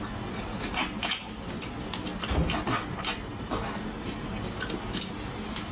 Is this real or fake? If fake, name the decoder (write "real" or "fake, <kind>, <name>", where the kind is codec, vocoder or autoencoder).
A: real